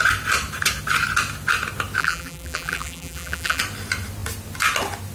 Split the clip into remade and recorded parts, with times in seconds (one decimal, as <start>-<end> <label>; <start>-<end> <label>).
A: 0.0-2.0 recorded; 2.0-3.6 remade; 3.6-5.1 recorded